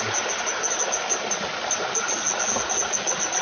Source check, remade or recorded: recorded